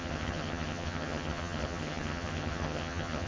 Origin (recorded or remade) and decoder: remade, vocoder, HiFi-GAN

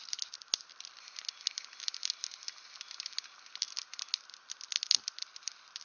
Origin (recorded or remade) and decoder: recorded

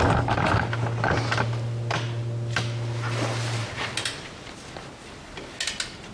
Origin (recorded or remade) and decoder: recorded